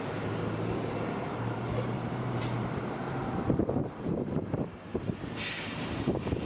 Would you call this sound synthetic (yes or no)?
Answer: yes